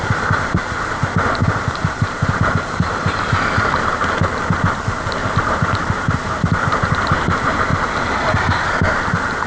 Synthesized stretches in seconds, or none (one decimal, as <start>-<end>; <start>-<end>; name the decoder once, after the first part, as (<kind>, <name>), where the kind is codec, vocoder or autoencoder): 1.4-4.0 (vocoder, BigVGAN v2); 5.2-7.0